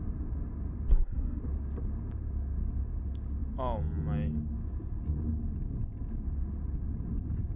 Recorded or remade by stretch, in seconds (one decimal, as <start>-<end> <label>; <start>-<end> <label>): 0.0-0.9 recorded; 0.9-1.4 remade; 1.4-7.6 recorded